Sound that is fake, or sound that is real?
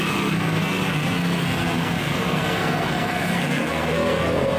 fake